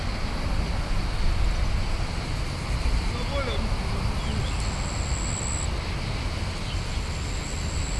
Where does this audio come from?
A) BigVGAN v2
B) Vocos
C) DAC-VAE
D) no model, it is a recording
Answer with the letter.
D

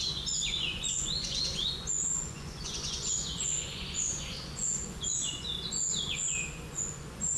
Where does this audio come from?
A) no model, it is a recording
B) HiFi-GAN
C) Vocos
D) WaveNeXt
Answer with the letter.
C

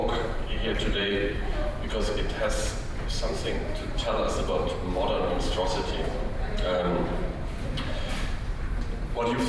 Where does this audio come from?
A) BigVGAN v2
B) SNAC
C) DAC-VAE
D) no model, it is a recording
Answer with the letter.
A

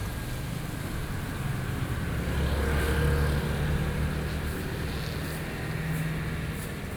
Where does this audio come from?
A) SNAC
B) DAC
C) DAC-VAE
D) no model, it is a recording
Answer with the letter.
D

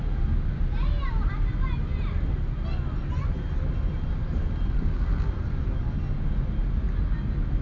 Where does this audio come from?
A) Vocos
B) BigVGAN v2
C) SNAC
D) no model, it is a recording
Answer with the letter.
D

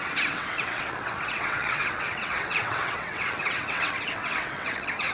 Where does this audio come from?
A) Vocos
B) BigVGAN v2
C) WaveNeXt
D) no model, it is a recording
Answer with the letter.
C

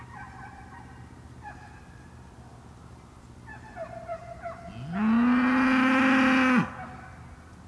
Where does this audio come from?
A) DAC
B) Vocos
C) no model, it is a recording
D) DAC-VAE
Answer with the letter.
C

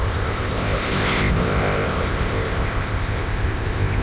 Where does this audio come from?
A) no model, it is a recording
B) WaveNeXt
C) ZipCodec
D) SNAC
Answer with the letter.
C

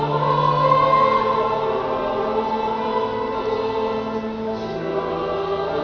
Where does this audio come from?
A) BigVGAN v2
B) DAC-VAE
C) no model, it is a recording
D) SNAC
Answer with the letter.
C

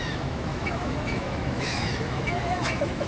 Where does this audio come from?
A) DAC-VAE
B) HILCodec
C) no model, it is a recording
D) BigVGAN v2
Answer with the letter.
A